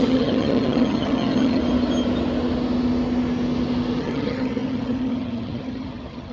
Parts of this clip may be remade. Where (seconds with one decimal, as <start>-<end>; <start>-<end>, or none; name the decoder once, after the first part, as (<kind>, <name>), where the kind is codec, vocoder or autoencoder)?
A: 0.0-1.6 (vocoder, HiFi-GAN); 4.0-6.3